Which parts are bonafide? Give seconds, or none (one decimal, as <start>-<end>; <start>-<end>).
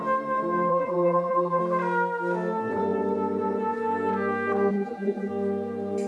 0.0-0.7; 1.6-4.7; 5.3-6.1